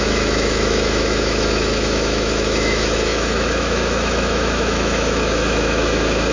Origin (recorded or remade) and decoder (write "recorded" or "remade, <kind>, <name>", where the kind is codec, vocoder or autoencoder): remade, autoencoder, DAC-VAE